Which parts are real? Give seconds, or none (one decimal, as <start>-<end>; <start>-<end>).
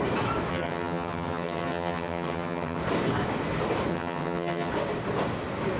0.0-0.5; 2.8-3.9; 4.7-5.8